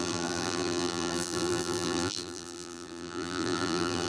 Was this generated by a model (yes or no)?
yes